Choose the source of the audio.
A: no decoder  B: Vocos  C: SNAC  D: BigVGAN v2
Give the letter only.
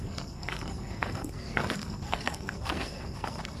C